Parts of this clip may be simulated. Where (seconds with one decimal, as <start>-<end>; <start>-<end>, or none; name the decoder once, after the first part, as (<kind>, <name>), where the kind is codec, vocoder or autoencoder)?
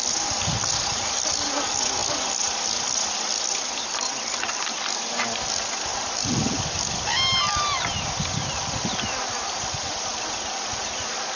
none